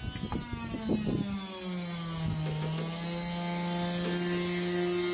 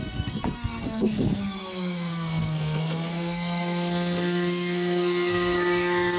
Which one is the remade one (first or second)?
second